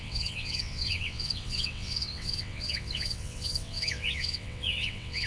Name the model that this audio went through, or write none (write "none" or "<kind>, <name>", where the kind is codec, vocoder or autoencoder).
vocoder, WaveNeXt